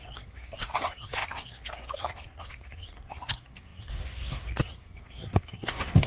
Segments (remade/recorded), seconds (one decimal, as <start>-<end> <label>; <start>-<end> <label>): 0.0-6.1 remade